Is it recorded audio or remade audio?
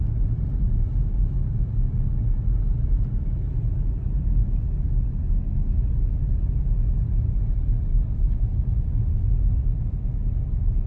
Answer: recorded